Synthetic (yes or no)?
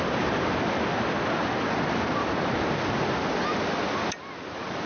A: no